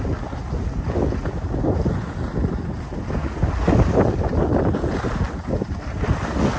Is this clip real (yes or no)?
yes